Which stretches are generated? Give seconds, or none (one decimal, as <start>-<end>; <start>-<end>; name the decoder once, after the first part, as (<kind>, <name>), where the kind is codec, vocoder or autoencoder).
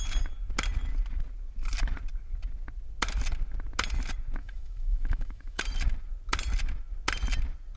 4.4-5.6 (autoencoder, DAC-VAE)